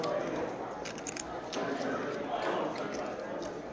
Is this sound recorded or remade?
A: recorded